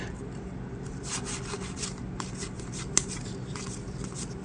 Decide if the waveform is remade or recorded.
recorded